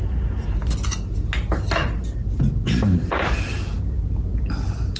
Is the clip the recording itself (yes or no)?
yes